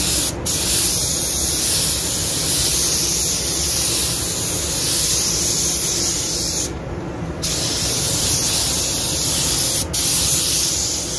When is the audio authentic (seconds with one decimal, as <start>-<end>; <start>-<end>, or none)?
0.0-11.2